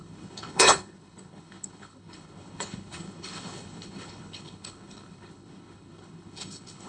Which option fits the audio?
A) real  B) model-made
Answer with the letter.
B